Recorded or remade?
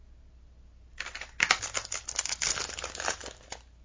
recorded